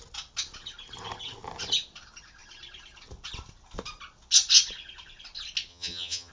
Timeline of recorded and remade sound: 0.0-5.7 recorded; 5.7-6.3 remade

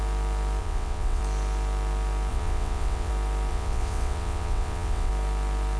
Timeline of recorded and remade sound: 0.0-0.6 recorded; 0.6-1.2 remade; 1.2-2.3 recorded; 2.3-3.1 remade; 3.1-3.5 recorded; 3.5-5.1 remade; 5.1-5.8 recorded